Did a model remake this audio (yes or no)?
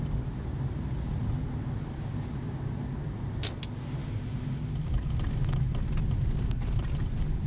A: no